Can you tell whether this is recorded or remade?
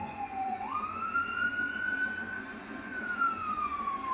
remade